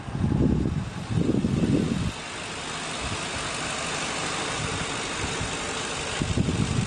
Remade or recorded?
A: recorded